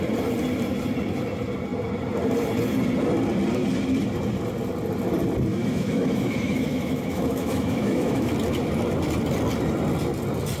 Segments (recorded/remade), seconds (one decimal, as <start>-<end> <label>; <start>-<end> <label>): 0.0-5.5 recorded; 5.5-8.3 remade; 8.3-10.6 recorded